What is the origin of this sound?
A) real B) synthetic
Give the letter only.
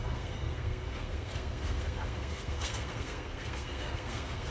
B